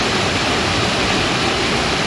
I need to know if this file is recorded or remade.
recorded